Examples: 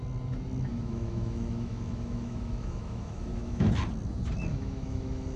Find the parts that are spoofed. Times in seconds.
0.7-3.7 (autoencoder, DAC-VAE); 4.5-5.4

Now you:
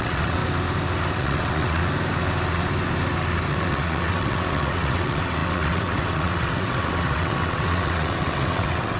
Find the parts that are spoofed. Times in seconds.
0.0-0.4 (vocoder, WaveNeXt); 1.1-1.8; 3.5-9.0